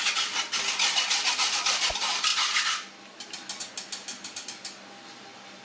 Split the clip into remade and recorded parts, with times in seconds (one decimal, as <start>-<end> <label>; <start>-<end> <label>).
0.0-5.6 recorded